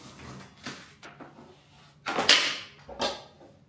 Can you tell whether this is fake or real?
real